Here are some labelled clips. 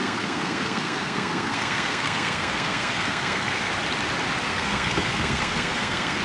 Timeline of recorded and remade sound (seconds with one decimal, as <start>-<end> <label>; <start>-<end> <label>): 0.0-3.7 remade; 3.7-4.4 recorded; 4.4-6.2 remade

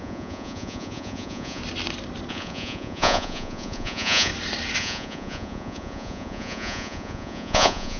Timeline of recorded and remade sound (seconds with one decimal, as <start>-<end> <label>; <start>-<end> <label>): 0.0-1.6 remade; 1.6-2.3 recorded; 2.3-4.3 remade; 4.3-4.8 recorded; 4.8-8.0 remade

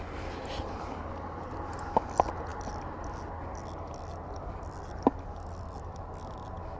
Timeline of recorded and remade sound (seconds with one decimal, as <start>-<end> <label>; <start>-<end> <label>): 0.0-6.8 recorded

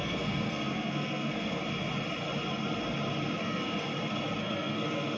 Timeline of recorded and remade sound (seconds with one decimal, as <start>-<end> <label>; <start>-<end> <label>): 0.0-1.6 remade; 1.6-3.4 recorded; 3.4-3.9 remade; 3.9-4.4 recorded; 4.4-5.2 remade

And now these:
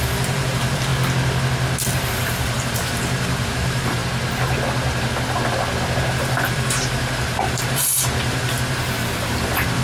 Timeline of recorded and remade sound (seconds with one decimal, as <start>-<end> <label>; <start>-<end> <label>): 0.0-0.9 remade; 0.9-1.9 recorded; 1.9-4.0 remade; 4.0-6.1 recorded; 6.1-9.8 remade

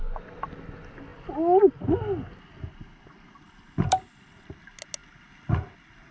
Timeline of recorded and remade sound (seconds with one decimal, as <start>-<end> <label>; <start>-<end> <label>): 0.0-6.1 recorded

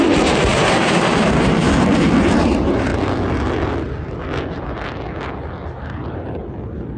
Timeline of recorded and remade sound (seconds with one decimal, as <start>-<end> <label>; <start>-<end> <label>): 0.0-2.9 remade; 2.9-5.8 recorded; 5.8-6.4 remade; 6.4-7.0 recorded